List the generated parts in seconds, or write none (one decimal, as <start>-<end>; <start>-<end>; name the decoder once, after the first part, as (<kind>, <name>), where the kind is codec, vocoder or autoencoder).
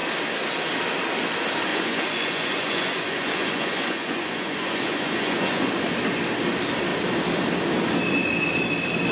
1.7-5.7 (vocoder, Vocos)